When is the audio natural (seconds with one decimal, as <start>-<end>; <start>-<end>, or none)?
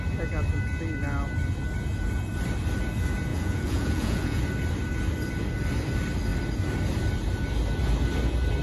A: 0.0-3.3; 4.4-8.6